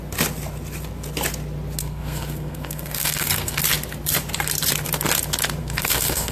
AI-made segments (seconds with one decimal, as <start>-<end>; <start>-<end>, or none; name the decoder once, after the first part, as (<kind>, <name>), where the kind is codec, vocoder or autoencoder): 1.8-3.6 (codec, SNAC); 5.6-6.3